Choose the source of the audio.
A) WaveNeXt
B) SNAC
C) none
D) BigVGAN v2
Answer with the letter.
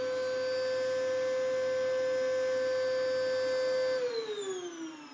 C